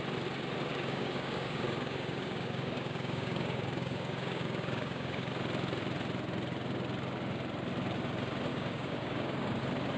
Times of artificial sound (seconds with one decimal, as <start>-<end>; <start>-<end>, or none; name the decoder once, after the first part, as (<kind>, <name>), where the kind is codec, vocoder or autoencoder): 0.7-5.3 (codec, DAC); 8.5-9.6